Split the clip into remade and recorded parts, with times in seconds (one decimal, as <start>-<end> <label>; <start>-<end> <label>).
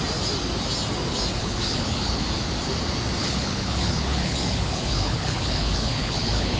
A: 0.0-1.4 recorded; 1.4-2.2 remade; 2.2-3.2 recorded; 3.2-6.6 remade